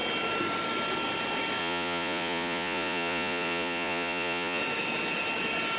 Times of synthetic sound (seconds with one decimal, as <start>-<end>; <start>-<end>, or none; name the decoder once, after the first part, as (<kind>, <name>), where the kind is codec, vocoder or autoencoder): 1.6-4.6 (vocoder, Vocos)